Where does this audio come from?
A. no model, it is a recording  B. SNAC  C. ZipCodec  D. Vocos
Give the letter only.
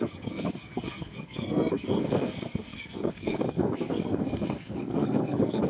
B